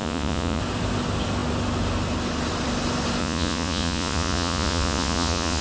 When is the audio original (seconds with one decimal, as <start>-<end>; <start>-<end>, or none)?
0.6-3.2